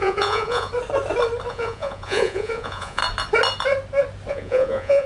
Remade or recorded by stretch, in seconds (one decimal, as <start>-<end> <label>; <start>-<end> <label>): 0.0-0.7 remade; 0.7-1.5 recorded; 1.5-3.0 remade; 3.0-4.3 recorded; 4.3-5.1 remade

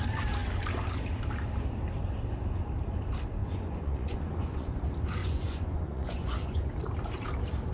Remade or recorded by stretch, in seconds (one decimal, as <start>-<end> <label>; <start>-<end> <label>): 0.0-3.4 recorded; 3.4-4.8 remade; 4.8-5.2 recorded; 5.2-6.7 remade; 6.7-7.7 recorded

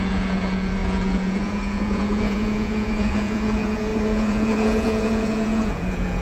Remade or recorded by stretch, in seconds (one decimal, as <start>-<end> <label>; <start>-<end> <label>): 0.0-6.2 remade

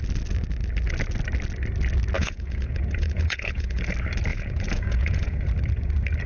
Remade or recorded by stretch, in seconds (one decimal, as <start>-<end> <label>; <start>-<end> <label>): 0.0-2.2 recorded; 2.2-3.9 remade; 3.9-4.3 recorded; 4.3-5.5 remade; 5.5-6.3 recorded

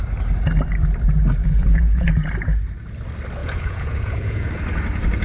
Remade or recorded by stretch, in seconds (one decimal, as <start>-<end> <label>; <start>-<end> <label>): 0.0-1.4 recorded; 1.4-2.3 remade; 2.3-3.4 recorded; 3.4-4.5 remade; 4.5-5.2 recorded

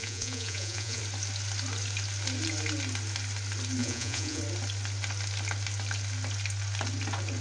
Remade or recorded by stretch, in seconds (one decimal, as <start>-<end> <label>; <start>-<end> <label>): 0.0-1.0 remade; 1.0-3.8 recorded; 3.8-4.4 remade; 4.4-7.4 recorded

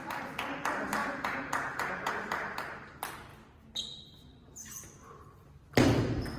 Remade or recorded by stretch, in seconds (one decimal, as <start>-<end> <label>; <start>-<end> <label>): 0.0-1.0 recorded; 1.0-2.1 remade; 2.1-6.4 recorded

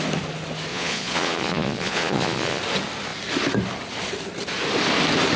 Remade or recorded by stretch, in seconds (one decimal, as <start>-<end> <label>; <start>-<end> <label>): 0.0-0.7 recorded; 0.7-2.6 remade; 2.6-5.4 recorded